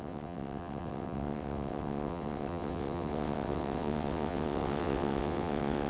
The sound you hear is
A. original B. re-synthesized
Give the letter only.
B